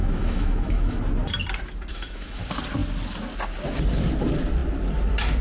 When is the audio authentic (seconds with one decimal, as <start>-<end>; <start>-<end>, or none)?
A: 1.0-1.9; 2.4-5.4